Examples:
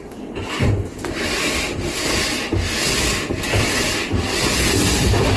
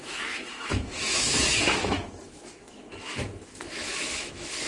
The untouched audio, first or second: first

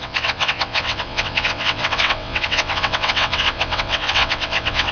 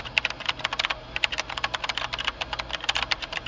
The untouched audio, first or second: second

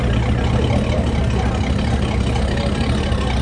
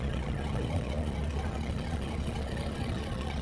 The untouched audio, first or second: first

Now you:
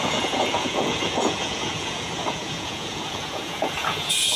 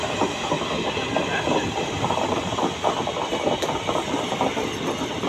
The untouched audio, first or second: second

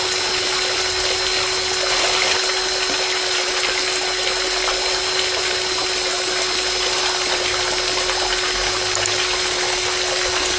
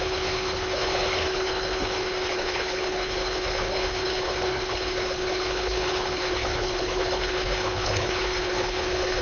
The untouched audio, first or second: first